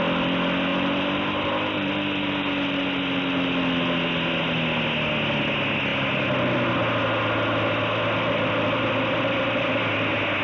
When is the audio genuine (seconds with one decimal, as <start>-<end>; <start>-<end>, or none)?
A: 0.0-10.4

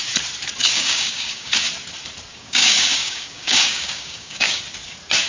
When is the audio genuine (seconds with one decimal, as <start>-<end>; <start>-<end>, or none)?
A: 0.0-0.6; 1.5-2.3; 4.6-5.3

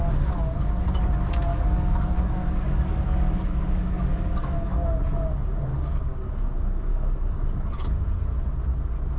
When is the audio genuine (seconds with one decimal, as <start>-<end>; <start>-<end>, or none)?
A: 0.0-1.5; 4.7-5.7; 6.3-6.9; 8.0-9.2

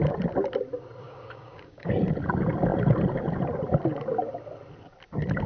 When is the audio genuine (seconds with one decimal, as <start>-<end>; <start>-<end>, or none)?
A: 0.0-1.0; 1.9-5.5

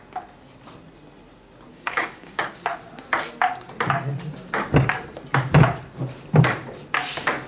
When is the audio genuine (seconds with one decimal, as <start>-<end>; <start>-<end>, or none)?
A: 0.0-1.7; 2.5-7.5

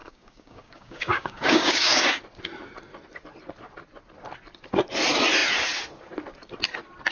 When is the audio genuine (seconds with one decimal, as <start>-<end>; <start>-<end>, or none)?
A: 2.2-7.1